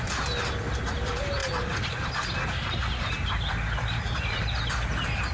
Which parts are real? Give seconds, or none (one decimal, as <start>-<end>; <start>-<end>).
0.0-5.3